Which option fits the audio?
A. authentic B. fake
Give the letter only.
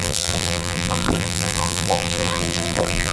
B